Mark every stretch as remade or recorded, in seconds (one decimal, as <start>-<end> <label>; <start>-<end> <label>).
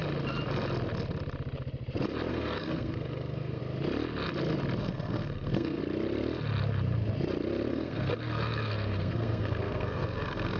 0.0-2.3 recorded; 2.3-3.6 remade; 3.6-4.8 recorded; 4.8-5.8 remade; 5.8-7.7 recorded; 7.7-10.6 remade